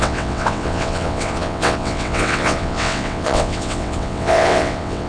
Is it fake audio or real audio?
fake